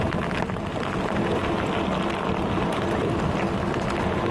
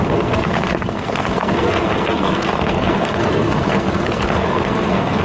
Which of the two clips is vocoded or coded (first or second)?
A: second